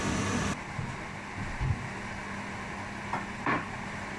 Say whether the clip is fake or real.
real